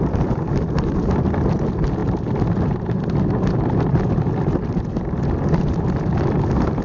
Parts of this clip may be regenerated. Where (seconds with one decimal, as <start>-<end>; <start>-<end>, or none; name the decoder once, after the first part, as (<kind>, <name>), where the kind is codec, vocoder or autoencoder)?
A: none